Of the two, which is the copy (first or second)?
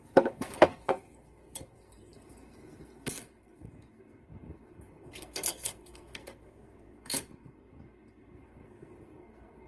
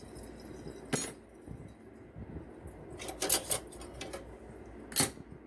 first